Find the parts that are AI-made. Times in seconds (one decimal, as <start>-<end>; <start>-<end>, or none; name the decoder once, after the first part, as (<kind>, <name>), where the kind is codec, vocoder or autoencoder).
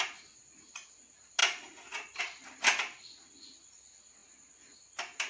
none